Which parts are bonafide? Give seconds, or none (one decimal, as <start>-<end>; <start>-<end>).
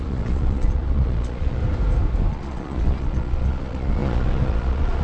1.6-2.3